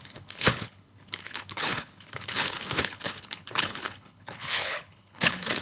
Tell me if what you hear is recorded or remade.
remade